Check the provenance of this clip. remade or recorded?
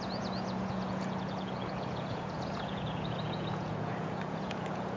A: remade